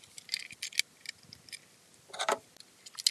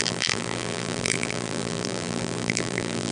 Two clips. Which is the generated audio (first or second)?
second